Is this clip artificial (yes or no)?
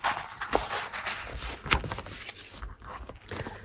no